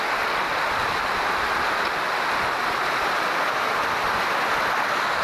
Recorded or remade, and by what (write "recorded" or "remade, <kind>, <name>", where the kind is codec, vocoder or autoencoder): recorded